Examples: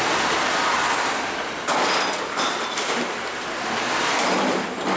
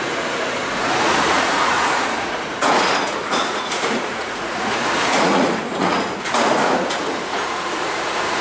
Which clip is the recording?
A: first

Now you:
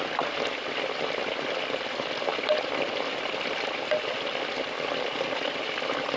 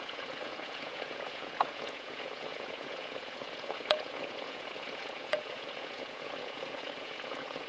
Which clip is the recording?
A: first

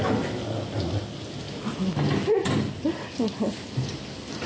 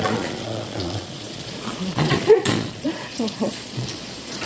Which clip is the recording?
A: first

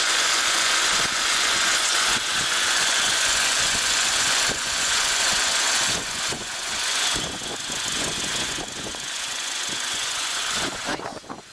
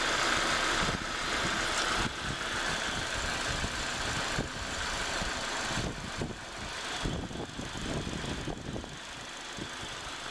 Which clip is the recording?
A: second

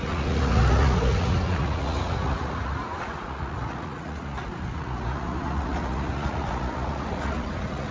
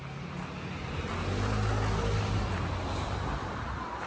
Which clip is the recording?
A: second